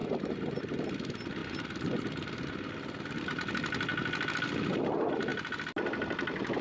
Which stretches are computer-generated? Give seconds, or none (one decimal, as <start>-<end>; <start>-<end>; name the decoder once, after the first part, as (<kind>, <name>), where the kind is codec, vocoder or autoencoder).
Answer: 0.0-0.6 (vocoder, BigVGAN v2)